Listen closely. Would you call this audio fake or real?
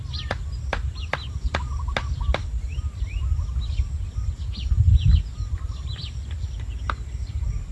real